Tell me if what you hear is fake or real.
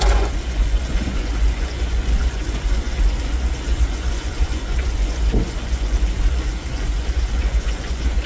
fake